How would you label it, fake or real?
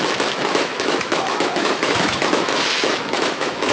fake